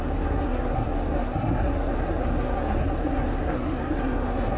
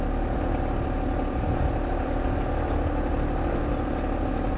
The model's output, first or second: first